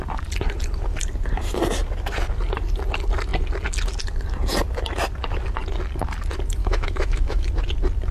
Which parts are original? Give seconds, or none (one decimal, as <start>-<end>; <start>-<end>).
0.0-6.6; 7.5-8.1